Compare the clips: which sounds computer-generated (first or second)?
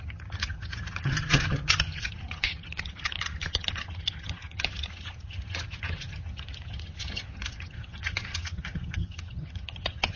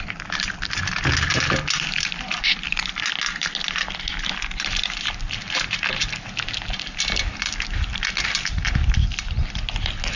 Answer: first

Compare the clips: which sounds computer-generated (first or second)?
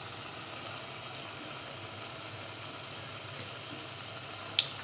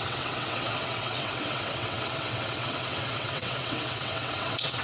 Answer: second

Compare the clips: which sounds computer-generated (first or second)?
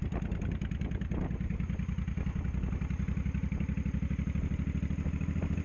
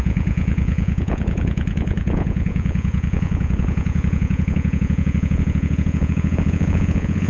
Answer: second